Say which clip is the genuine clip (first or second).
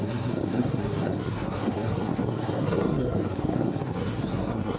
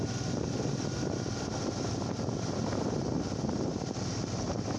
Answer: second